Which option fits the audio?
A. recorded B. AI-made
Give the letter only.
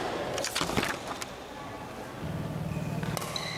A